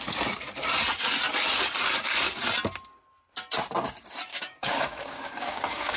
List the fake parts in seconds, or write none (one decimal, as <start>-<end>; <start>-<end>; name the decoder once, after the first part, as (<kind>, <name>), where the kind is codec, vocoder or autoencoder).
4.3-6.0 (codec, DAC)